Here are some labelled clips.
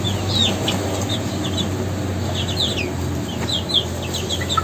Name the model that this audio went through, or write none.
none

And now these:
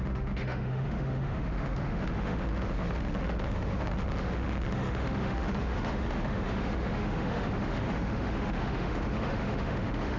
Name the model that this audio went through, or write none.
autoencoder, DAC-VAE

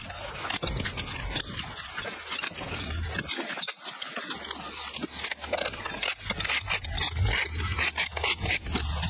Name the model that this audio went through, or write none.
none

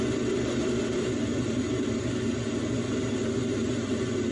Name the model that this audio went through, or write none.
none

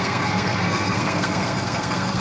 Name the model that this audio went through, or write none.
codec, SNAC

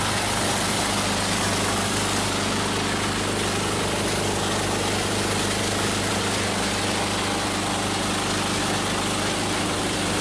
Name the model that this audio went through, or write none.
none